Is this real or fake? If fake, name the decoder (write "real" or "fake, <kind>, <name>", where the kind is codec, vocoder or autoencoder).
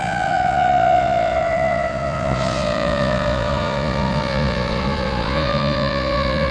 fake, vocoder, Vocos